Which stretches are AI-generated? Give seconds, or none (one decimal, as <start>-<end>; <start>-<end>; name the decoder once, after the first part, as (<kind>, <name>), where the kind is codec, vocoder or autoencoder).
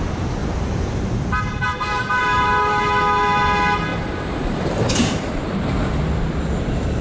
0.4-3.0 (vocoder, BigVGAN v2); 3.9-6.2